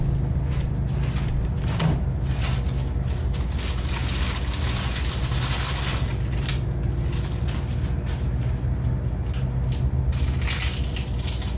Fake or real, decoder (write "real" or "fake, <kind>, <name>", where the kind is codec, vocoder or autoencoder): real